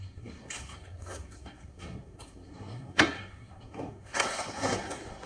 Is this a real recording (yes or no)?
no